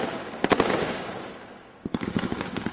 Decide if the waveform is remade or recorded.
remade